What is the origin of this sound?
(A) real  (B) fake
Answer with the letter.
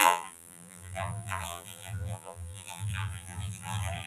B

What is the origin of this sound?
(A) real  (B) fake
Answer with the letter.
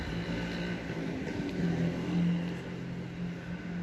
A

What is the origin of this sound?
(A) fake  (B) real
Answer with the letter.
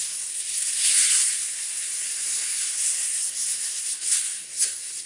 A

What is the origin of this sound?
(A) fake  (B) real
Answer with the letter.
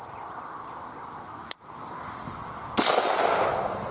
B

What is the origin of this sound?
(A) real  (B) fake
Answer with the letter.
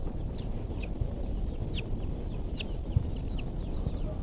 A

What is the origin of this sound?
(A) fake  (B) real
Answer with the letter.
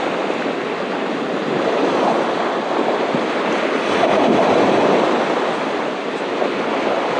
B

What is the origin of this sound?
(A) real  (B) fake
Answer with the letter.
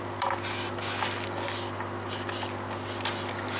A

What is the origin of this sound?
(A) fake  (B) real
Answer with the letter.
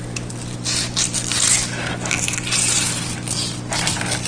B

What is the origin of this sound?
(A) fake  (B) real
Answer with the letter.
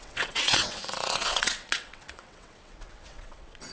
A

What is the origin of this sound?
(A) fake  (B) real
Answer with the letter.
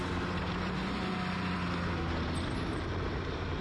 B